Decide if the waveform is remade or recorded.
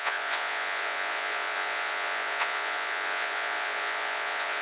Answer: remade